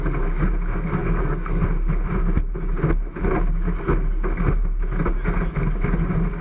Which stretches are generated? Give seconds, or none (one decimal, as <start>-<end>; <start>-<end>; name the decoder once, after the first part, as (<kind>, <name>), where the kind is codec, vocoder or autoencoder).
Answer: 1.0-1.6 (codec, DAC)